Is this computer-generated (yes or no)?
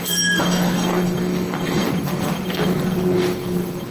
yes